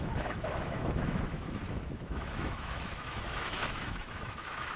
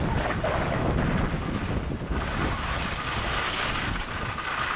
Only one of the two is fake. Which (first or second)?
first